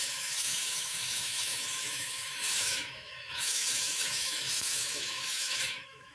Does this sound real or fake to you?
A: fake